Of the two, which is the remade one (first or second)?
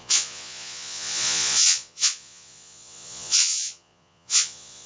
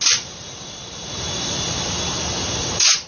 first